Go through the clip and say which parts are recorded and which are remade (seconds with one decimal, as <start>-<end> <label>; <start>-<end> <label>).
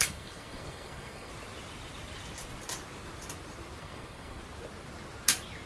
0.0-1.3 remade; 1.3-3.8 recorded; 3.8-4.4 remade; 4.4-5.7 recorded